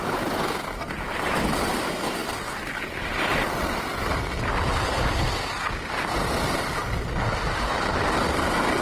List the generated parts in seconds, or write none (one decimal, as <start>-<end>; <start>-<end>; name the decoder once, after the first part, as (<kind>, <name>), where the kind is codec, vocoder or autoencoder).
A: none